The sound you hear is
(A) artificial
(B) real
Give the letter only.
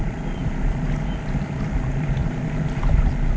B